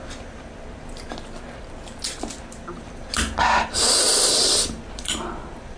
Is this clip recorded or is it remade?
recorded